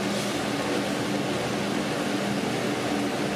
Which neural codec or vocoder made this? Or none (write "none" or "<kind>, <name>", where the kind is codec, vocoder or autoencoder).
none